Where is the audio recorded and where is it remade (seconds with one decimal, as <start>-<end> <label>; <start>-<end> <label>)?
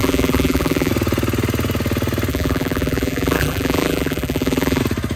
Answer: 0.0-0.9 remade; 0.9-2.3 recorded; 2.3-4.8 remade; 4.8-5.2 recorded